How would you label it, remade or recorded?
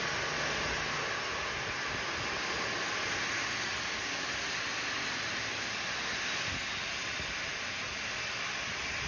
recorded